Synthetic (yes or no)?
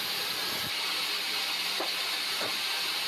yes